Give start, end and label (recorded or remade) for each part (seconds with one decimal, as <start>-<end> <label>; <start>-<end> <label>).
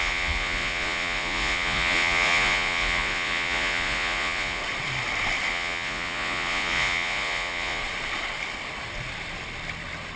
0.0-4.6 remade; 4.6-5.5 recorded; 5.5-7.8 remade; 7.8-10.2 recorded